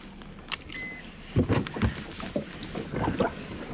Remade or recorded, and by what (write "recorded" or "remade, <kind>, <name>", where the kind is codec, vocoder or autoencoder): recorded